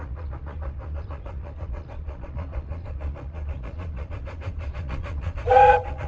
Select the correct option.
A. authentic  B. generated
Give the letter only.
B